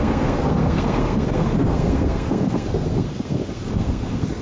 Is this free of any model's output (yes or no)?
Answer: no